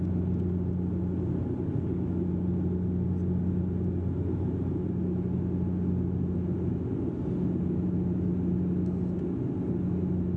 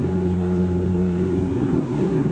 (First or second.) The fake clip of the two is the second